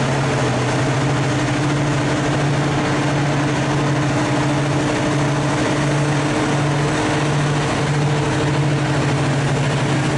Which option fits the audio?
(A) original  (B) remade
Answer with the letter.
A